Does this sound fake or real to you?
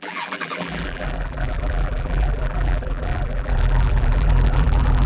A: fake